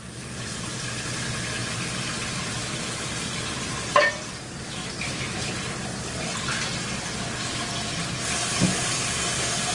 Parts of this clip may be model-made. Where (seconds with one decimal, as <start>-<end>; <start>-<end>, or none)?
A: 1.6-3.7